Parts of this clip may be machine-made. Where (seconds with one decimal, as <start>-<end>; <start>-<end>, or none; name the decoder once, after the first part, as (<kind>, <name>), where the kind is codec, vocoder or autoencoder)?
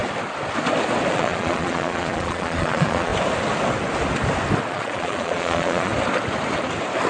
1.1-3.1 (vocoder, Vocos); 4.7-5.9